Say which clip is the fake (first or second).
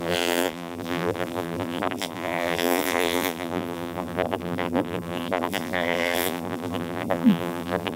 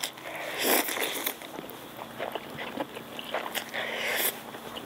first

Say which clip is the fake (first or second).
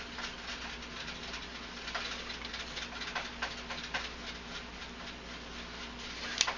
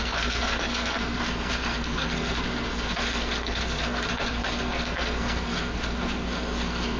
second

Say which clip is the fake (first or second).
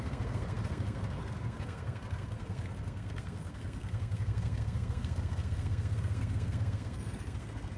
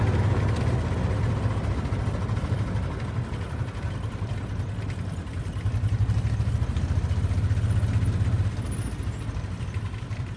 first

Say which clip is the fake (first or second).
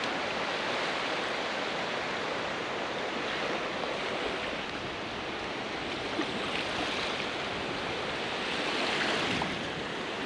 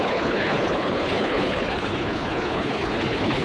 second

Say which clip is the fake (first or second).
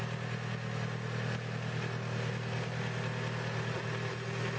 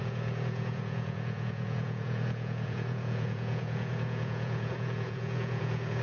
second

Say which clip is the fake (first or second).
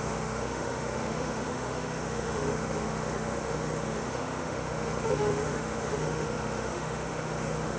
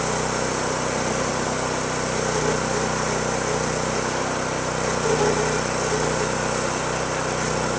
first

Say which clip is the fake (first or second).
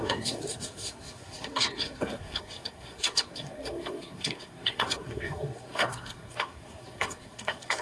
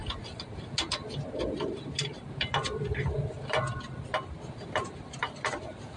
first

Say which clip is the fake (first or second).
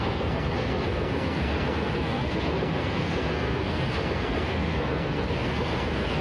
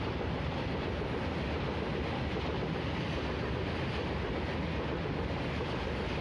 first